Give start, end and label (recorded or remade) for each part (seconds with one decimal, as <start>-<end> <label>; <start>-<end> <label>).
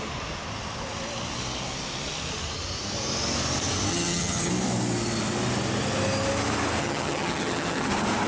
0.0-3.9 recorded; 3.9-4.5 remade; 4.5-6.8 recorded; 6.8-7.9 remade; 7.9-8.3 recorded